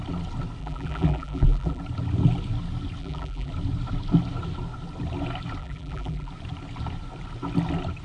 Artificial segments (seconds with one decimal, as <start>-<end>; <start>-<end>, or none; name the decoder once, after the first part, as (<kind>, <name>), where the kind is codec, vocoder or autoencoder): 0.6-1.8 (vocoder, BigVGAN v2); 3.0-3.5; 5.6-6.3